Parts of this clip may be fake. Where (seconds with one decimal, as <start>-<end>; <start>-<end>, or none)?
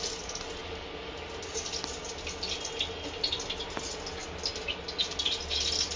none